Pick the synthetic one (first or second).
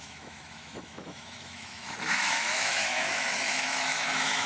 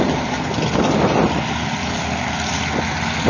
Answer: first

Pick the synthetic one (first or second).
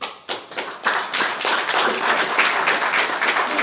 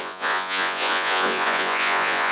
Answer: second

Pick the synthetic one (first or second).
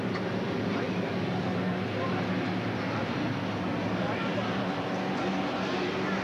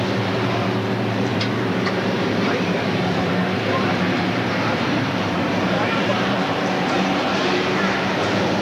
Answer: second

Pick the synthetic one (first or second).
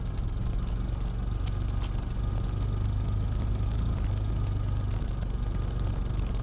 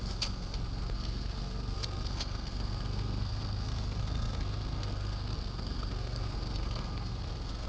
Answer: second